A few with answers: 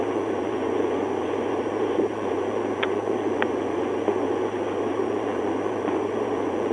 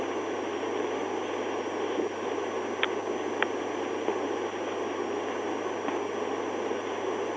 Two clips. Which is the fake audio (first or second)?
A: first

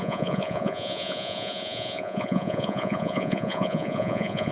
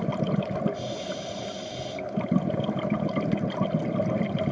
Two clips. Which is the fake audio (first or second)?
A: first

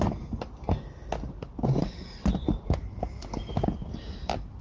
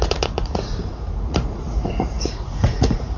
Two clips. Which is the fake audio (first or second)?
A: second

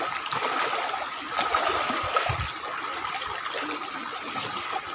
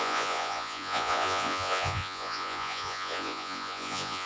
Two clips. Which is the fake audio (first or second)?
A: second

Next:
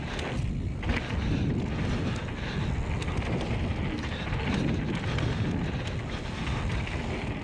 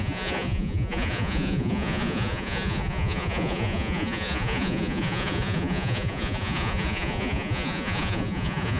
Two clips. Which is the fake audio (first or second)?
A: second